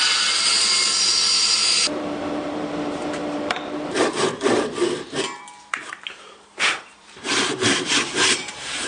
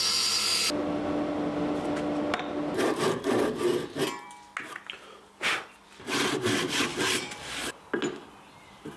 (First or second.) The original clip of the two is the second